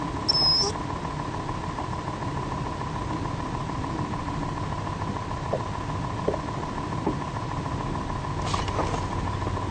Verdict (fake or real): real